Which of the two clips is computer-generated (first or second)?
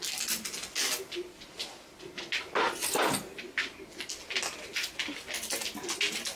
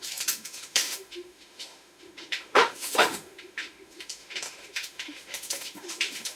second